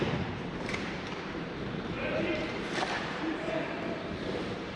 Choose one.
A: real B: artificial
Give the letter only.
B